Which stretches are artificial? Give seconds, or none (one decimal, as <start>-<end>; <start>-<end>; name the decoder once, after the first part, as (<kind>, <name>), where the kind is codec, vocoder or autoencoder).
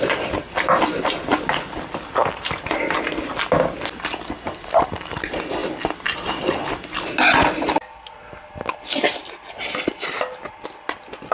none